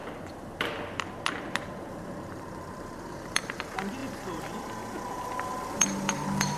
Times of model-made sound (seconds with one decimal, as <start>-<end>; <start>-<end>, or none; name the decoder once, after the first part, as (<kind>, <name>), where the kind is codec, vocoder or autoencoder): 1.9-4.0 (vocoder, BigVGAN v2); 5.8-6.6